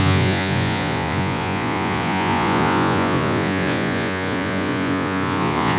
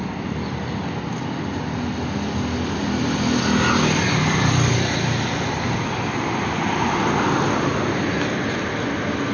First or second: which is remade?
first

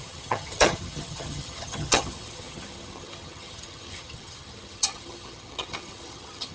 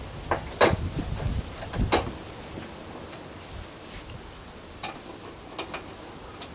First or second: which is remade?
first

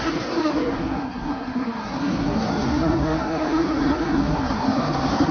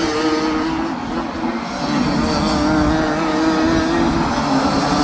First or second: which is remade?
first